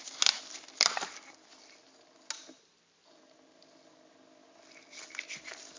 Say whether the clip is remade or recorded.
recorded